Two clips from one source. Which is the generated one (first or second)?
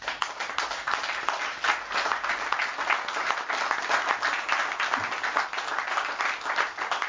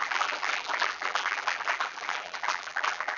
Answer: second